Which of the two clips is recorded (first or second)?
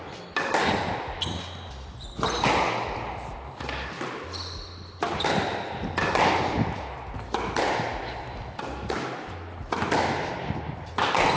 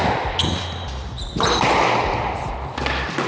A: first